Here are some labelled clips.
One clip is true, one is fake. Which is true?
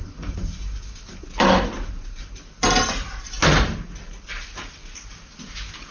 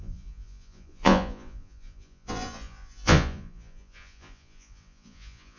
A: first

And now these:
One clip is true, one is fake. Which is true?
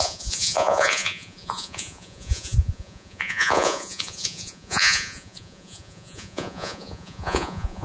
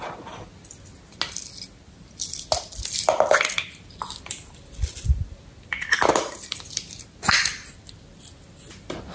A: second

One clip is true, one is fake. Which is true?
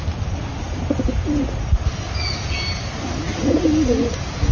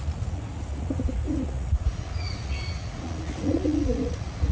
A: first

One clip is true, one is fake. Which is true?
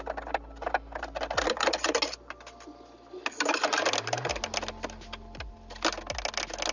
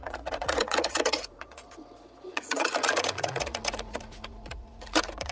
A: first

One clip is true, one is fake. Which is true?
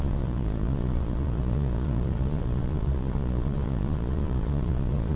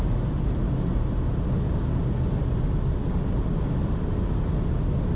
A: second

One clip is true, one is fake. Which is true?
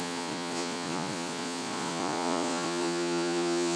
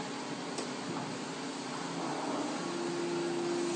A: second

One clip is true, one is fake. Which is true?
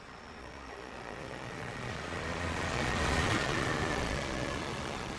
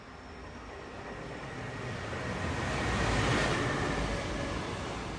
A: second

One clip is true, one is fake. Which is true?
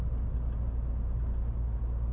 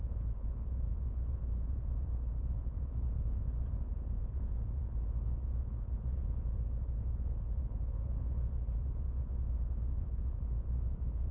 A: first